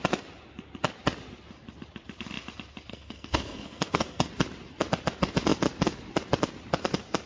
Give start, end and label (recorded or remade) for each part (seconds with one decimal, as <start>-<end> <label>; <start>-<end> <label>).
0.0-2.9 recorded; 2.9-4.3 remade; 4.3-7.3 recorded